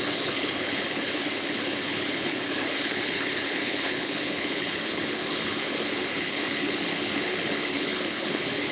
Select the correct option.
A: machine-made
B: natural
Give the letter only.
A